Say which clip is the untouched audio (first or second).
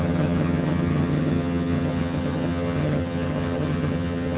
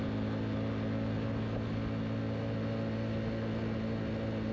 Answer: second